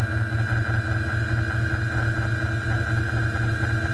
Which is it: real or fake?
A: real